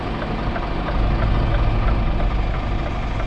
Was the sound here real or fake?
real